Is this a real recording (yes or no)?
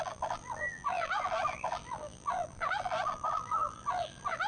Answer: no